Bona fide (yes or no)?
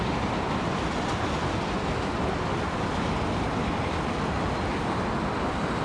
yes